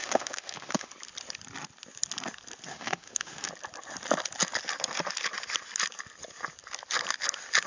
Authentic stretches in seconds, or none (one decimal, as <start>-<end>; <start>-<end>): 0.9-2.7; 3.5-7.7